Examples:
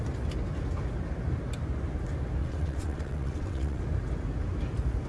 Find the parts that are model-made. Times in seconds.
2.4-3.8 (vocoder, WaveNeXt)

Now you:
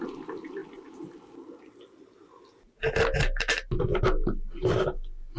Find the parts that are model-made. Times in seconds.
none

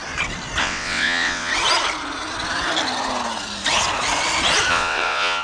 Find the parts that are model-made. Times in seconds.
0.6-1.5 (vocoder, WaveNeXt); 4.7-5.4

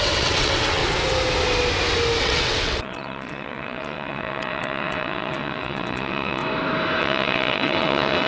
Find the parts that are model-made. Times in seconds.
0.0-0.8 (vocoder, WaveNeXt); 2.2-6.4; 7.0-8.3

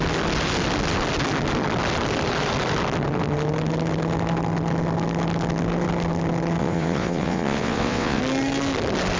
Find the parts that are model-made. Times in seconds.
6.6-8.2 (vocoder, WaveNeXt)